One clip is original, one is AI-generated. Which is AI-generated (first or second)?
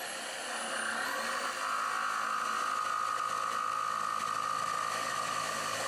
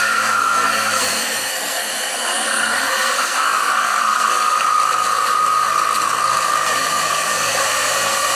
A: second